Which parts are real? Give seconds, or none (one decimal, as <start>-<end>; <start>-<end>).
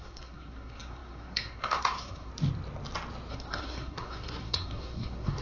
2.3-3.3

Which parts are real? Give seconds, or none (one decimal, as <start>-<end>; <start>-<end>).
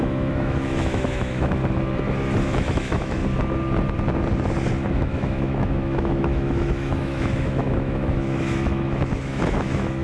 1.6-2.4; 3.2-4.9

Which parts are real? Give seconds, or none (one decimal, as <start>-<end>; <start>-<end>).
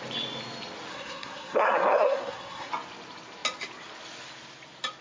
0.0-0.9; 2.7-5.0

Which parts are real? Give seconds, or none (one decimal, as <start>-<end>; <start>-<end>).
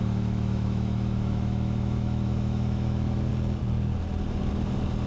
3.3-5.1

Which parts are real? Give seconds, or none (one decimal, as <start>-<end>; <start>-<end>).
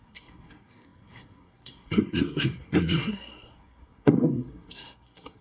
none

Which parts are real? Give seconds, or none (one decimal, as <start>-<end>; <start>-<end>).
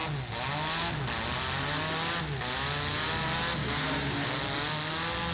0.0-3.6; 4.3-5.3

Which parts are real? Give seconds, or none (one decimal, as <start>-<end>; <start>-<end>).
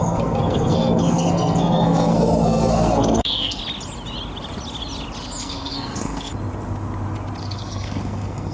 3.6-5.4; 6.3-7.4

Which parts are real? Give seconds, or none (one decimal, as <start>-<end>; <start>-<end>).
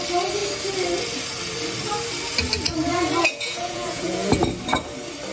0.0-3.2; 4.3-5.3